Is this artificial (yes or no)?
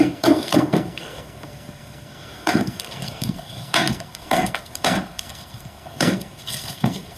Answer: yes